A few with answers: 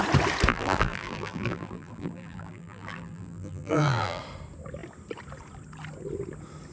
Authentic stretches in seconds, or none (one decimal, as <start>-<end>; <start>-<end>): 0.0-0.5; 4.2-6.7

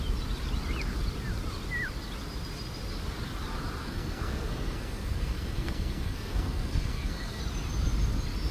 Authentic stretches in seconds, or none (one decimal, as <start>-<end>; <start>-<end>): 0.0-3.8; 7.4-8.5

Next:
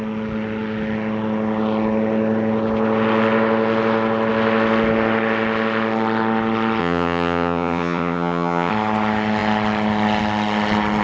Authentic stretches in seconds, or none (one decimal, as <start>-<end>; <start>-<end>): 0.0-6.8; 8.7-11.0